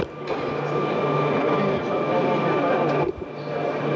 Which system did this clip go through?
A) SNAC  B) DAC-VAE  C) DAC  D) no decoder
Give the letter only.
D